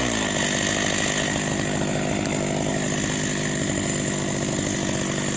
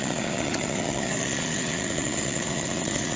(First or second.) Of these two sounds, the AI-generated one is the second